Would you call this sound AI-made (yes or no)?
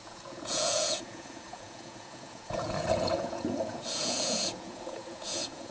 yes